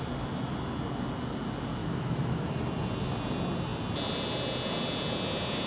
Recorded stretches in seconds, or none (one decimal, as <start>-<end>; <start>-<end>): 0.0-1.8; 2.5-5.7